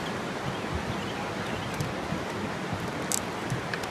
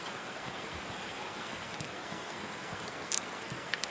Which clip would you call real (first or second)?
first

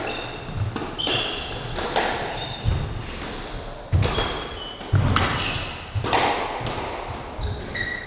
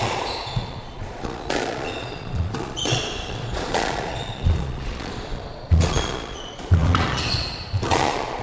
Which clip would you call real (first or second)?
first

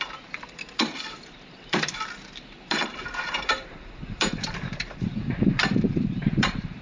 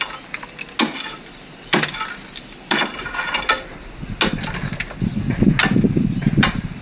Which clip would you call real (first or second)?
second